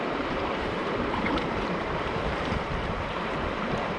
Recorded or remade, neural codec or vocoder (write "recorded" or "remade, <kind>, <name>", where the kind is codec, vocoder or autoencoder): remade, vocoder, BigVGAN v2